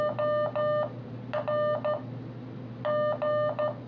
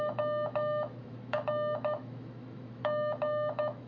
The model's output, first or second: second